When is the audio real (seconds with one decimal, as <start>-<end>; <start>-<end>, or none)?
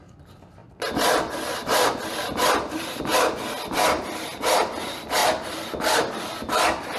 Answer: 0.0-7.0